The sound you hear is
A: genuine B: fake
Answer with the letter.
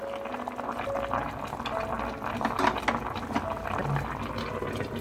A